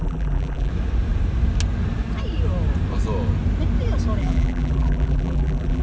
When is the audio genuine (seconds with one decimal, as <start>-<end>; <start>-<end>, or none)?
0.7-4.2